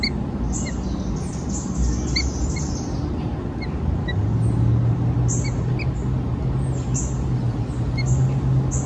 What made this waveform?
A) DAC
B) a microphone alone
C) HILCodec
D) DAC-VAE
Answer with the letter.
B